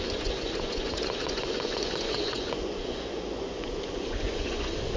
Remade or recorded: remade